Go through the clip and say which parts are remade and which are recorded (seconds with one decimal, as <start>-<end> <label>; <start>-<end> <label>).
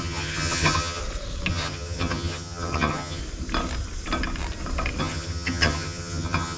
0.0-1.0 remade; 1.0-1.5 recorded; 1.5-3.2 remade; 3.2-5.0 recorded; 5.0-6.6 remade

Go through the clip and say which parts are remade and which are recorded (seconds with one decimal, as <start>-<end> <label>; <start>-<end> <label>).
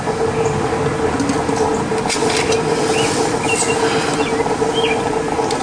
0.0-5.6 recorded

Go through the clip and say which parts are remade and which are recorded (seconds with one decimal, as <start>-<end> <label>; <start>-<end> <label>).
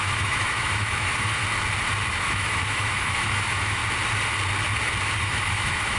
0.0-1.4 remade; 1.4-2.1 recorded; 2.1-3.8 remade; 3.8-5.2 recorded; 5.2-6.0 remade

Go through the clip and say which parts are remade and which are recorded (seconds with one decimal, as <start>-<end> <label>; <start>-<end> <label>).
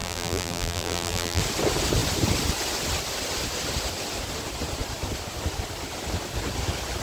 0.0-1.4 remade; 1.4-7.0 recorded